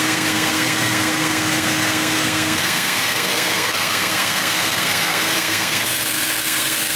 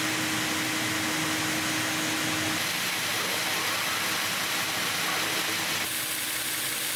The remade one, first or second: first